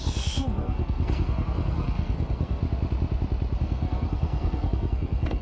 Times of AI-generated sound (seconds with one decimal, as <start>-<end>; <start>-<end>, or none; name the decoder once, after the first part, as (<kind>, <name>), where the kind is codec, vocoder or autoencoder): 0.0-2.6 (codec, SNAC); 3.6-5.4